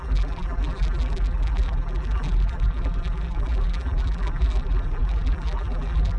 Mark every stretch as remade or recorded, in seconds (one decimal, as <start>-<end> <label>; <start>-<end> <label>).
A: 0.0-6.2 remade